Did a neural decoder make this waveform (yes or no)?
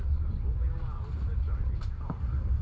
no